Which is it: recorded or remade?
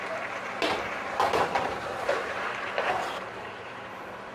remade